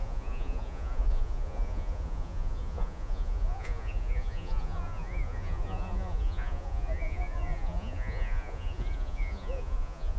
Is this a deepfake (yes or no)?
yes